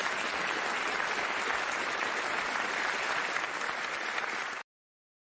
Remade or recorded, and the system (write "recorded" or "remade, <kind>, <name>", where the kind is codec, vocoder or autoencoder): recorded